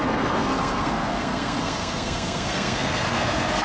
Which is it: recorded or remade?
remade